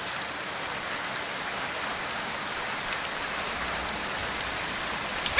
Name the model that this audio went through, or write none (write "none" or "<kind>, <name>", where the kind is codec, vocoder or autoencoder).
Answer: vocoder, BigVGAN v2